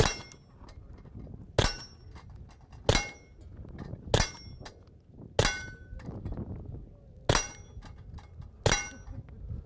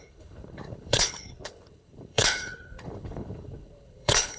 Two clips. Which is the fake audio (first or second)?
second